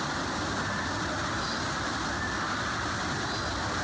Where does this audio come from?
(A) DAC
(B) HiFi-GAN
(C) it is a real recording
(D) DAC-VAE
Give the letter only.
C